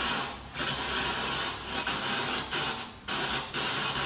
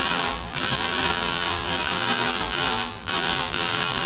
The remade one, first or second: second